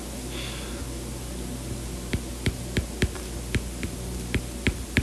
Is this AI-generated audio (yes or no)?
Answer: no